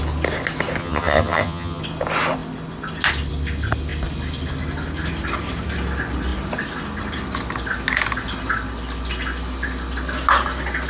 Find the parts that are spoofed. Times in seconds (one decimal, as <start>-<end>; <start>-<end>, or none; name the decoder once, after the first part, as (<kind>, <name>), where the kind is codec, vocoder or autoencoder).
0.8-1.8 (vocoder, HiFi-GAN)